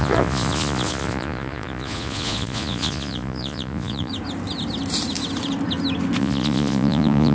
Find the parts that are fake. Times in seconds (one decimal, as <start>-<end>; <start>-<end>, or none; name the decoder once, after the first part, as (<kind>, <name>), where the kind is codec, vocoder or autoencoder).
0.0-4.1 (vocoder, Vocos); 6.2-7.3